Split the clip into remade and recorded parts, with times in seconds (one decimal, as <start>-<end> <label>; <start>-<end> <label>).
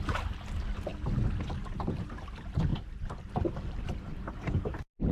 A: 0.0-0.9 remade; 0.9-1.7 recorded; 1.7-5.1 remade